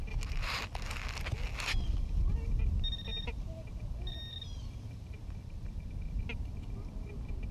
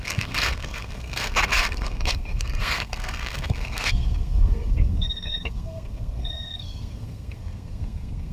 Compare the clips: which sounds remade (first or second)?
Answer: second